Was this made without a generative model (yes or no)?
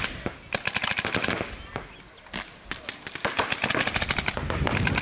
yes